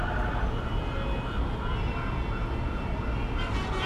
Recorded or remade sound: recorded